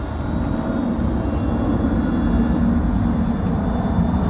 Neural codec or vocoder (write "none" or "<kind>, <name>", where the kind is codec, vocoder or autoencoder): none